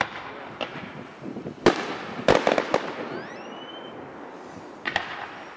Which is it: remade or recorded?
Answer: recorded